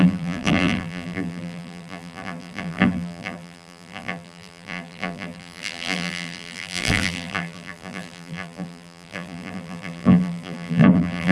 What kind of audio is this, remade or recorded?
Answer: remade